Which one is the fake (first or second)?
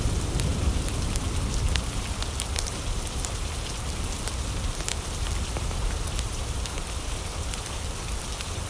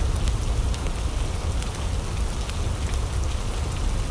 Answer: first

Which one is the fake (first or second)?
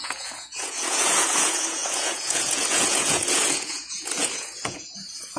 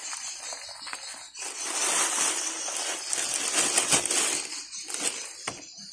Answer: first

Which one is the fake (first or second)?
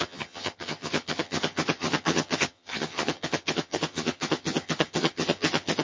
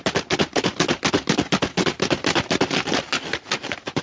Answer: first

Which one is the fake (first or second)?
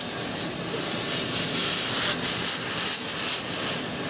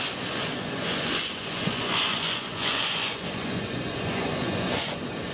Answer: second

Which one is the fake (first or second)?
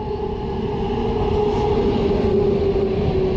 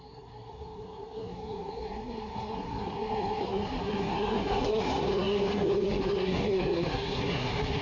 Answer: second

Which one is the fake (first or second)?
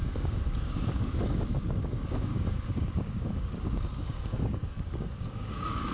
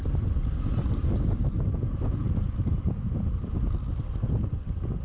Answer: first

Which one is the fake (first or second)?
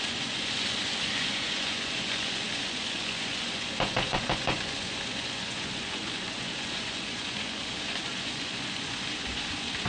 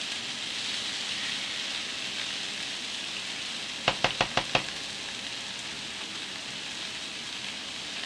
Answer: first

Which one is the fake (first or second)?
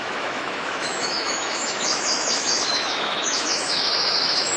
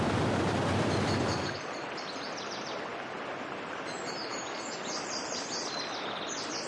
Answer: first